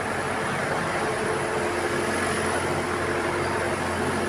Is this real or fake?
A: real